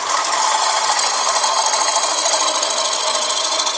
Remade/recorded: recorded